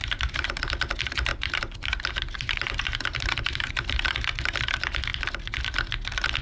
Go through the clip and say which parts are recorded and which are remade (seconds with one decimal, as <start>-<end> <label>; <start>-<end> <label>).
0.0-0.6 remade; 0.6-1.3 recorded; 1.3-3.7 remade; 3.7-6.4 recorded